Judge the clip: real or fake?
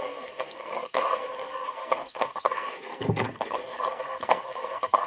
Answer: fake